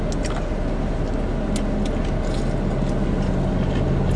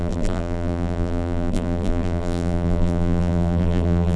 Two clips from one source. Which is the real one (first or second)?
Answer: first